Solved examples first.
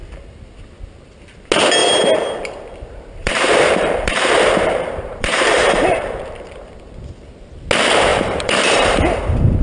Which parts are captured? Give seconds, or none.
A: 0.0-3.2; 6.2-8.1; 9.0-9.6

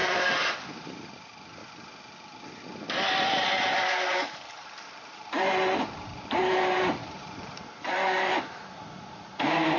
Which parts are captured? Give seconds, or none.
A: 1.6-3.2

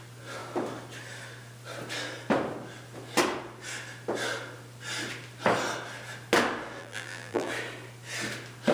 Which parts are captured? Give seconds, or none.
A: 0.0-6.8; 7.5-8.7